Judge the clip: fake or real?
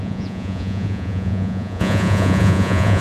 fake